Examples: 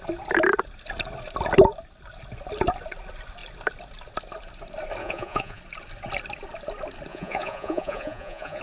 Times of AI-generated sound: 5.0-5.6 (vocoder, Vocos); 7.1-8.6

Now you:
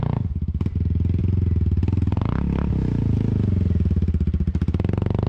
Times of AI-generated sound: none

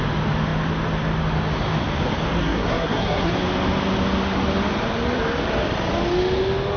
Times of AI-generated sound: 2.4-3.3 (codec, SNAC)

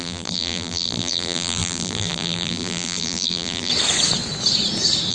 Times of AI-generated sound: 0.0-3.7 (vocoder, BigVGAN v2)

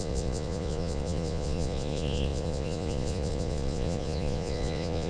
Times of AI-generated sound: 0.0-5.1 (vocoder, Vocos)

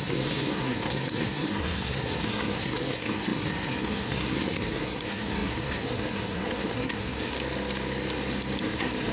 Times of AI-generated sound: 0.0-7.3 (codec, SNAC); 8.6-9.1